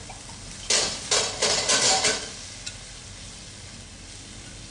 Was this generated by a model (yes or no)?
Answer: no